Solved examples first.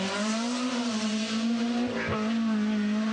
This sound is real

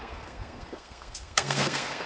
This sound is fake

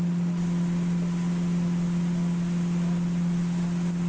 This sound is real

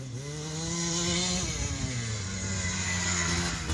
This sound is fake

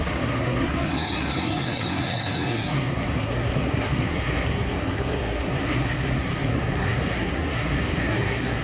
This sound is fake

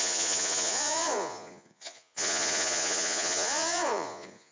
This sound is fake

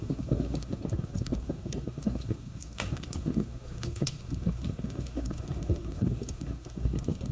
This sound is fake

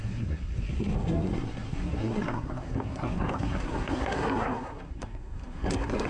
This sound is fake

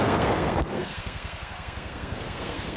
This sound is fake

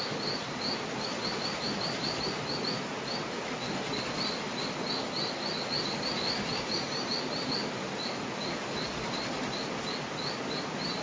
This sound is real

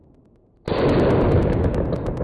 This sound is real